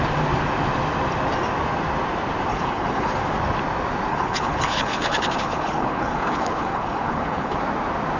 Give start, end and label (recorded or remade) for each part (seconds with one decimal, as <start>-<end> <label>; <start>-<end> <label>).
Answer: 0.0-2.5 recorded; 2.5-3.1 remade; 3.1-4.1 recorded; 4.1-7.6 remade; 7.6-8.2 recorded